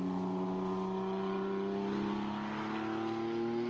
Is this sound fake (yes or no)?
no